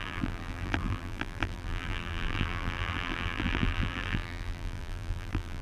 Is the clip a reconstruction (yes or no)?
yes